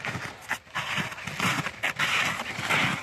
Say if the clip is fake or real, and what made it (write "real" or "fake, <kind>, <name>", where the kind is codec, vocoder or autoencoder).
real